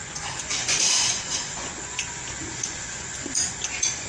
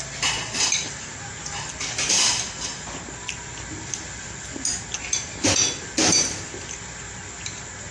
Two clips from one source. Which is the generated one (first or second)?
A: first